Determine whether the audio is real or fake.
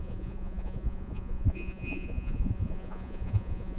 fake